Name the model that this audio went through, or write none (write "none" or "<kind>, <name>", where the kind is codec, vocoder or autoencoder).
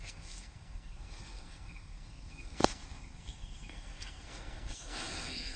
codec, SNAC